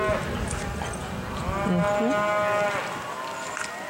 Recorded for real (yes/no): yes